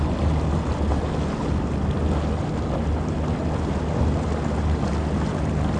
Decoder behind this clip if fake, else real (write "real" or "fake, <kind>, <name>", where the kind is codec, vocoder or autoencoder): real